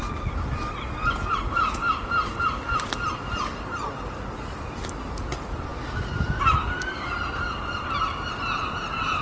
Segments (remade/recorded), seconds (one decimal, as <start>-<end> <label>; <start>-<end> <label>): 0.0-9.2 recorded